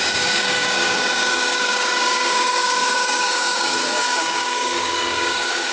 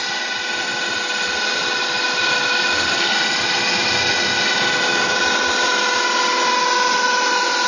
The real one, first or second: second